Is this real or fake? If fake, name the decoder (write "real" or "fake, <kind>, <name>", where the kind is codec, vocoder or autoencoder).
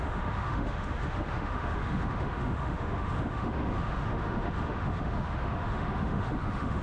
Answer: fake, autoencoder, DAC-VAE